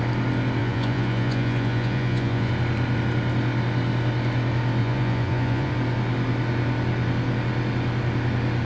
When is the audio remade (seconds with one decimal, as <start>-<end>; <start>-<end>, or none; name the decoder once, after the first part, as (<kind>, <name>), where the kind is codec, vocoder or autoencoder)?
0.6-2.5 (vocoder, Vocos); 4.8-5.7